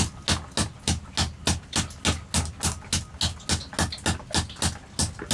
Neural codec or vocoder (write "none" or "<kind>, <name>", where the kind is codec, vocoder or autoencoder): none